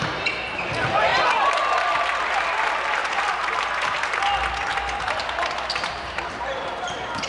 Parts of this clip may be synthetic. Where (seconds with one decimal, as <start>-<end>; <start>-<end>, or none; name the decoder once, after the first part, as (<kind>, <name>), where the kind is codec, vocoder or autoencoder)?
1.1-1.6 (vocoder, BigVGAN v2); 3.0-4.2; 4.7-6.7